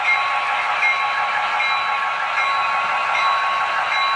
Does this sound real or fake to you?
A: real